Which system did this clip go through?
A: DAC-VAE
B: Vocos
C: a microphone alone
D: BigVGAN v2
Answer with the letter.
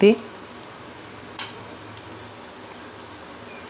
C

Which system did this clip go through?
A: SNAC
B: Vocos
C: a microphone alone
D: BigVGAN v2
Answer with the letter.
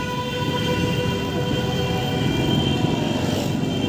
C